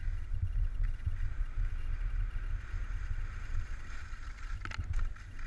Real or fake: real